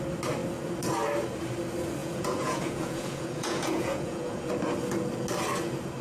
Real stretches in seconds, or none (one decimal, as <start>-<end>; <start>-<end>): 0.0-2.0; 4.5-6.0